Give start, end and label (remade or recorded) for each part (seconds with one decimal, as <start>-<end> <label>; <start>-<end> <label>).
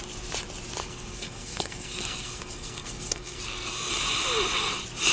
0.0-0.8 recorded; 0.8-3.9 remade; 3.9-5.1 recorded